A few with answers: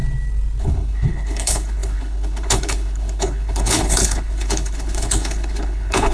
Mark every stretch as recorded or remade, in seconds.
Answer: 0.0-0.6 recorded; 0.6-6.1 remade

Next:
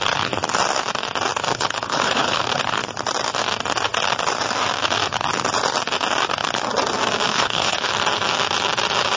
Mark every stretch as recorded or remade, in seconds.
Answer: 0.0-1.5 recorded; 1.5-2.4 remade; 2.4-7.3 recorded; 7.3-7.9 remade; 7.9-9.2 recorded